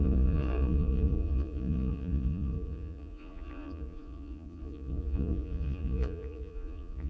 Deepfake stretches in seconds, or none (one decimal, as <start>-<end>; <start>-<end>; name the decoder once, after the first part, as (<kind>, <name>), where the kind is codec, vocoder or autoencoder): 0.0-7.1 (vocoder, Vocos)